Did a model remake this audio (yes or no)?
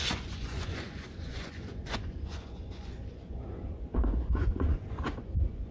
yes